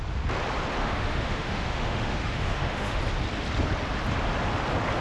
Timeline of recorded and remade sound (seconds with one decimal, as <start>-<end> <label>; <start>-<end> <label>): 0.0-0.8 recorded; 0.8-3.0 remade; 3.0-5.0 recorded